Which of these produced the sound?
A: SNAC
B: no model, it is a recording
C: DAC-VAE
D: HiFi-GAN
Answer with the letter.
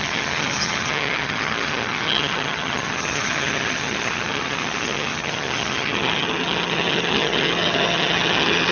D